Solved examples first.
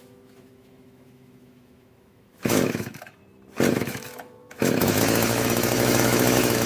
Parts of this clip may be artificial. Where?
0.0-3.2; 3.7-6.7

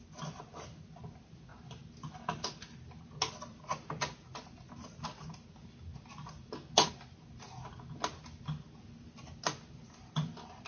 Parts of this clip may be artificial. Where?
none

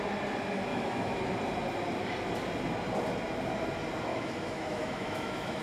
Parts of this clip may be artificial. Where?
0.7-1.2; 4.1-5.6